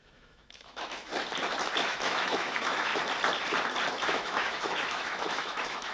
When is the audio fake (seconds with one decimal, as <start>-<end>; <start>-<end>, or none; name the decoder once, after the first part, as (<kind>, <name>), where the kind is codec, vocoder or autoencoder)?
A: 0.0-1.1 (autoencoder, DAC-VAE); 1.8-2.9; 3.9-5.9